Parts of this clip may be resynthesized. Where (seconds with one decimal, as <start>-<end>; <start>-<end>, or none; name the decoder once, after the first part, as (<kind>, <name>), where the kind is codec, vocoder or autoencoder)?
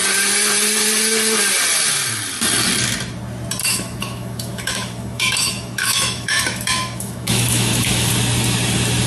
3.6-8.1 (autoencoder, DAC-VAE)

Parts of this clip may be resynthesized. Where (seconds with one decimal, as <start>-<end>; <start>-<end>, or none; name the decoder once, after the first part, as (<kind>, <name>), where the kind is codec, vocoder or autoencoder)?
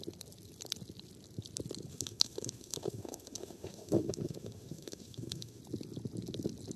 1.9-5.6 (autoencoder, DAC-VAE)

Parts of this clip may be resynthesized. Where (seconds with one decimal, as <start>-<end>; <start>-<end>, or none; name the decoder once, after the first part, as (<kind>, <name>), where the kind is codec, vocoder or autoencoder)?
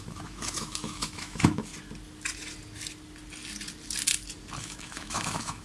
0.0-1.7 (autoencoder, DAC-VAE); 4.6-5.6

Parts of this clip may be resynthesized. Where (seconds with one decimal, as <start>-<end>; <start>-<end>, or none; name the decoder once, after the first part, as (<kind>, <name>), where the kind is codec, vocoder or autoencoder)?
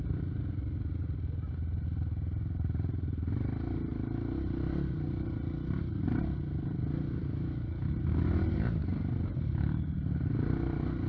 7.2-7.8 (autoencoder, DAC-VAE)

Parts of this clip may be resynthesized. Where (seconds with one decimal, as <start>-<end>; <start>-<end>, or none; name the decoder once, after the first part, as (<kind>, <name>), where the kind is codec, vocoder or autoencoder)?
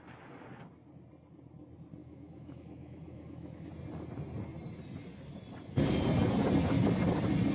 2.0-3.7 (autoencoder, DAC-VAE)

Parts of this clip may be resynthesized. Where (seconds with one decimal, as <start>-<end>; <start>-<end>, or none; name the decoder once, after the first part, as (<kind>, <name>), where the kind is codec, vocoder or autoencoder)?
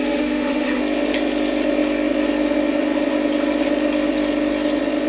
0.0-0.8 (autoencoder, DAC-VAE)